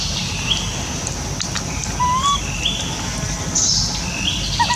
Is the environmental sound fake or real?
real